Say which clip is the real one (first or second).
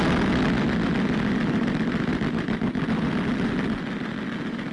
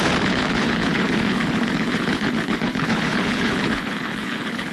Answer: first